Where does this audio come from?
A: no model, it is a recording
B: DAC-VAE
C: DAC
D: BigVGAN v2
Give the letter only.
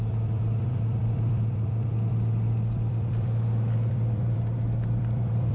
D